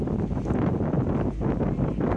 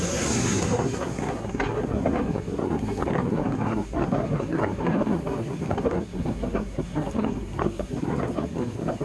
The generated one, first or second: second